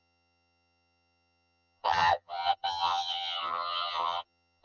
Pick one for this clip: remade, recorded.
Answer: remade